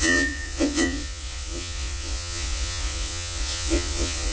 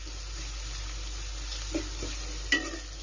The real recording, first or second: second